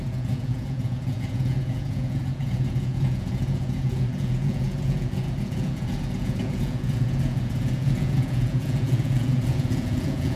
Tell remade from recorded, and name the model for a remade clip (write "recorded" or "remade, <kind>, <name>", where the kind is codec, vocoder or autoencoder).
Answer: remade, vocoder, Vocos